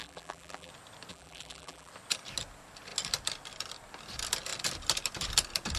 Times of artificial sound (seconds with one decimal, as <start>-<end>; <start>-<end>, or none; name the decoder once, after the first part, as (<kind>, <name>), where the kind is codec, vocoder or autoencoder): 0.0-0.7 (vocoder, BigVGAN v2); 1.1-1.9